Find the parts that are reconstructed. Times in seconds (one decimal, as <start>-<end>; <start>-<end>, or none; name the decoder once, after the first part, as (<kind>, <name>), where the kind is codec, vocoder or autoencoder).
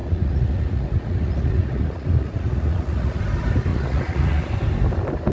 0.0-3.2 (vocoder, Vocos); 3.7-4.5